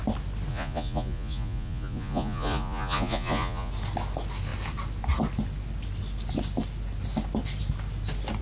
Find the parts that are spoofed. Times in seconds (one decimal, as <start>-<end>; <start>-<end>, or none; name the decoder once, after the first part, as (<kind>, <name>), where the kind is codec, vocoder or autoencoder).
0.5-3.7 (vocoder, Vocos)